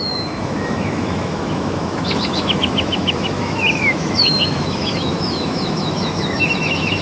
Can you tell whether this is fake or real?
fake